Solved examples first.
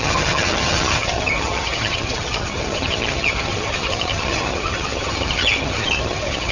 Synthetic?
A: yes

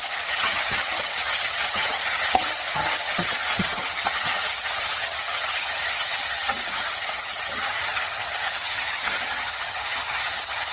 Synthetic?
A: yes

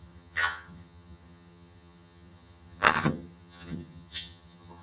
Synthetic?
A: yes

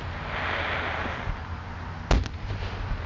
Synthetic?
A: no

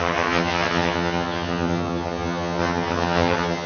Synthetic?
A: yes